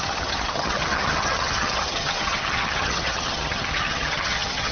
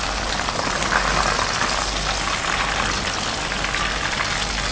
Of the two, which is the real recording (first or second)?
second